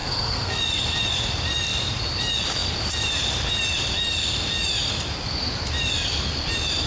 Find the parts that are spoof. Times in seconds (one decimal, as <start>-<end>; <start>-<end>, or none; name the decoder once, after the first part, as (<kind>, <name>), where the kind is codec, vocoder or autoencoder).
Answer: 0.0-0.6 (codec, SNAC)